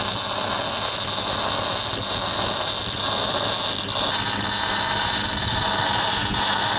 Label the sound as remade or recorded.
recorded